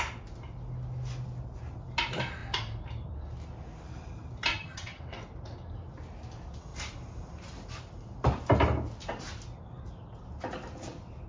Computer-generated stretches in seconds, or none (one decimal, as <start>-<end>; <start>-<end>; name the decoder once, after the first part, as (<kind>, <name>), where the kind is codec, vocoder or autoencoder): 4.5-5.0 (vocoder, HiFi-GAN)